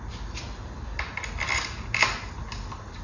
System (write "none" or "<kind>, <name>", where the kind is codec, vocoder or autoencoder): none